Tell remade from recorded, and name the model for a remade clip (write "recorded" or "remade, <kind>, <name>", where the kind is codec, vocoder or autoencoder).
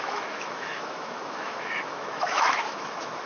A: remade, autoencoder, DAC-VAE